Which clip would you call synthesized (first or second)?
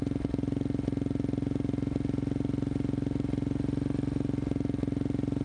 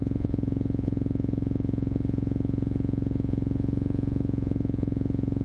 second